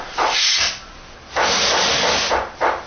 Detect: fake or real real